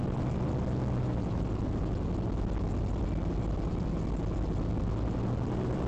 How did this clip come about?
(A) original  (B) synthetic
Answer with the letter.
A